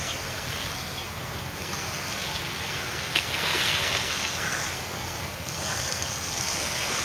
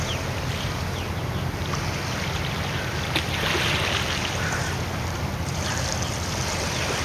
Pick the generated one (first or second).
first